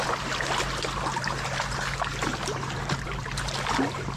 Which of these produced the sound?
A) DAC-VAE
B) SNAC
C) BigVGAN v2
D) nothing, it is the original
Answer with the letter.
D